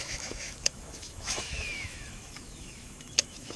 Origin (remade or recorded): remade